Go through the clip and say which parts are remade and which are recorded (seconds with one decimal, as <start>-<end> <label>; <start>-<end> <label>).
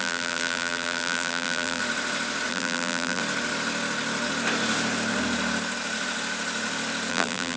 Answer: 0.0-1.8 remade; 1.8-2.5 recorded; 2.5-3.2 remade; 3.2-7.1 recorded; 7.1-7.6 remade